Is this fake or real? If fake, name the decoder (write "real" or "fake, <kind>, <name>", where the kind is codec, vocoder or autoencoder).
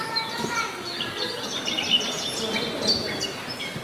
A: real